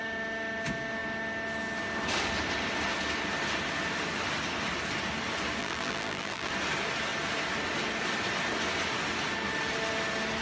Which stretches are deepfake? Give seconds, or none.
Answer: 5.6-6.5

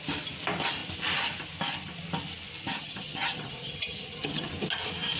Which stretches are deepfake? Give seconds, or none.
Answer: 2.7-4.5

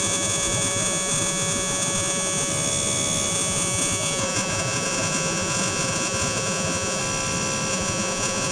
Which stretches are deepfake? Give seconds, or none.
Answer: 0.0-2.5; 3.3-7.0; 7.7-8.5

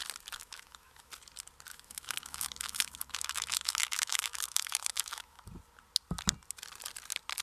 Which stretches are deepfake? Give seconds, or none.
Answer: 0.4-1.1; 1.7-5.4

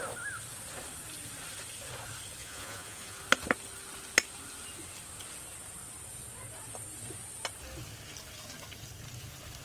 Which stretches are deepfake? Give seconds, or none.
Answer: 2.4-3.2

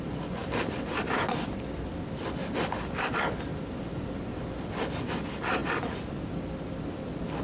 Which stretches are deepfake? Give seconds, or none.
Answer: 0.4-4.4

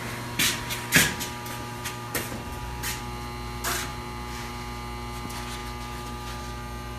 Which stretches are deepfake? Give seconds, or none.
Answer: 1.7-3.0; 3.9-4.5